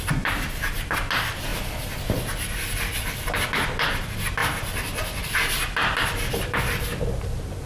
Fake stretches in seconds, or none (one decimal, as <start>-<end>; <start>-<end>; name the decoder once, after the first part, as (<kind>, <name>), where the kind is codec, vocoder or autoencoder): 1.5-3.0 (vocoder, BigVGAN v2); 4.4-6.6